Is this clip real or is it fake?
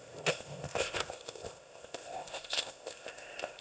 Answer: fake